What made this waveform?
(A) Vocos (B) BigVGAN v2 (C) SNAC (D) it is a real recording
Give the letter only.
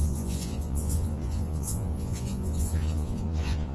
A